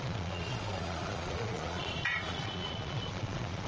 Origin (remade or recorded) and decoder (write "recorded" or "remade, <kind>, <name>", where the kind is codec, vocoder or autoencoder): remade, vocoder, Vocos